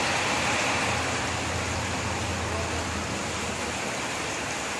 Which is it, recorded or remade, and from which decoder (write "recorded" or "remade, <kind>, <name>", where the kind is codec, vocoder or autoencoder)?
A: recorded